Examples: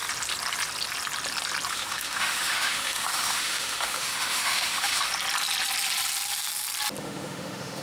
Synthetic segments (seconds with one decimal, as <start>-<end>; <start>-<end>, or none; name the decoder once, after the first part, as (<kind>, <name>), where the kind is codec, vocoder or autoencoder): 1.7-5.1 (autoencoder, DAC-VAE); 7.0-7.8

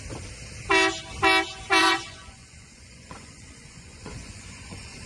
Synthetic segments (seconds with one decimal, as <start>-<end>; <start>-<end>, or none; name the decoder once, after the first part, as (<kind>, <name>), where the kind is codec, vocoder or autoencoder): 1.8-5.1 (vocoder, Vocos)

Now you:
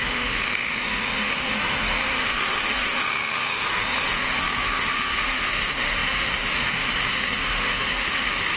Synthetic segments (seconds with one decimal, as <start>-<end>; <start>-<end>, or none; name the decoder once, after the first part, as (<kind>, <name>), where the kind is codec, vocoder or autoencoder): 0.0-8.6 (autoencoder, DAC-VAE)